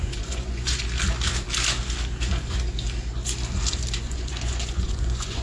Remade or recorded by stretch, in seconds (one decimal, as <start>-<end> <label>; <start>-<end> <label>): 0.0-0.8 remade; 0.8-4.0 recorded; 4.0-5.4 remade